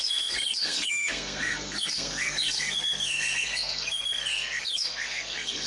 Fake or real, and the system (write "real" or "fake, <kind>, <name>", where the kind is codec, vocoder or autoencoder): fake, codec, SNAC